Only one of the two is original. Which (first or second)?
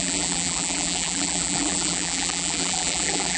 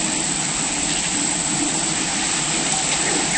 second